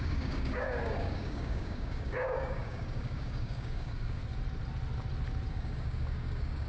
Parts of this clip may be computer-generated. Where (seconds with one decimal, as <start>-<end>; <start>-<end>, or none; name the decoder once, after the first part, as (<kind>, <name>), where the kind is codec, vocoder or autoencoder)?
0.0-4.2 (codec, DAC); 5.5-6.7